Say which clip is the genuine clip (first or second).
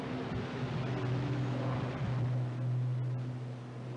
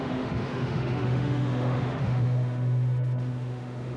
first